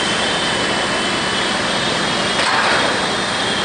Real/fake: real